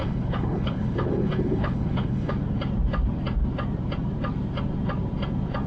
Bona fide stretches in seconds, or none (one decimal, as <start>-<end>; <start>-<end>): 2.3-5.7